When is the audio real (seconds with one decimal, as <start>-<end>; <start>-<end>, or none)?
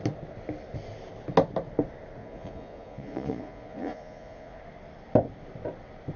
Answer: 0.0-2.2; 4.6-6.2